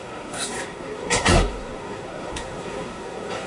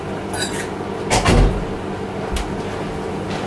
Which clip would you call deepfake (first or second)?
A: first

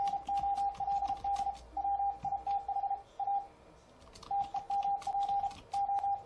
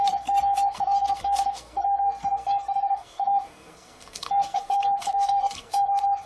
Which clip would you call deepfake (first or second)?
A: second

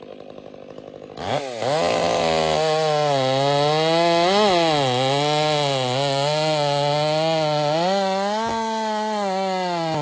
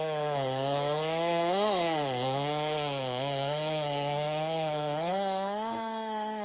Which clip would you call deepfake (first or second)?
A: second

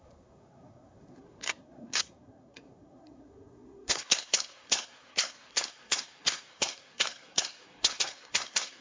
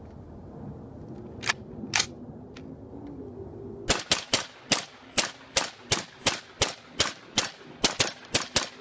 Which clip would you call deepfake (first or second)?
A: first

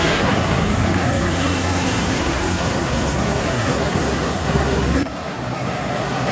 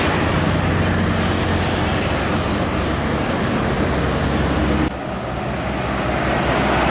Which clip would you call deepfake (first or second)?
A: first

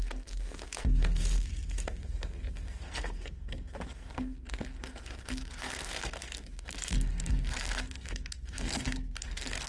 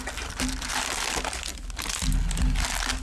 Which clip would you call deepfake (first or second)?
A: first